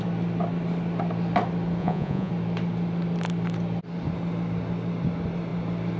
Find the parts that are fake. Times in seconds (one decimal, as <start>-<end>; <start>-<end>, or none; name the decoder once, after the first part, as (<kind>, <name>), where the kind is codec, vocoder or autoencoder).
1.8-2.3 (vocoder, Vocos)